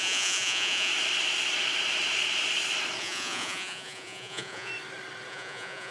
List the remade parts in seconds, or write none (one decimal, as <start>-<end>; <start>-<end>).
0.0-0.9; 3.0-4.7; 5.3-5.9

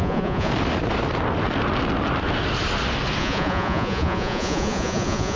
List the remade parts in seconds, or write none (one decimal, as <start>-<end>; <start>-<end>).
0.0-0.5; 3.2-5.4

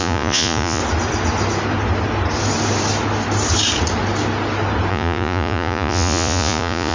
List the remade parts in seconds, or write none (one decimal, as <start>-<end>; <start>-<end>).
0.0-0.8; 4.9-6.9

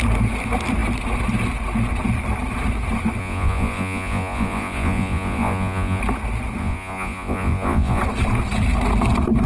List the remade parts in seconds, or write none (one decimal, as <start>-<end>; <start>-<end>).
3.2-6.0; 6.6-8.0

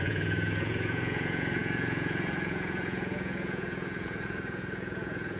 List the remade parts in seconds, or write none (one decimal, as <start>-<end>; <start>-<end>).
0.0-5.4

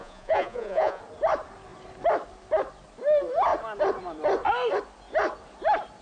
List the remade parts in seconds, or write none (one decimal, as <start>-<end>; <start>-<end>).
0.0-1.0

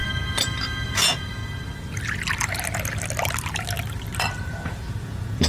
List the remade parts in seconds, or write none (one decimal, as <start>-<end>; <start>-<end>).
0.9-1.4; 4.7-5.5

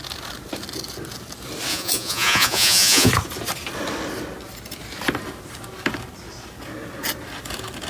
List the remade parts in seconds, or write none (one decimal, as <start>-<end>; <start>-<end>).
1.7-3.1